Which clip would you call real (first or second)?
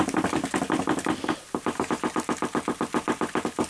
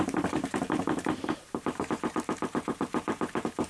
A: first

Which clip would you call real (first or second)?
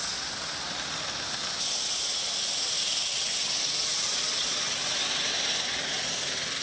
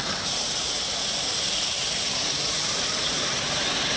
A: first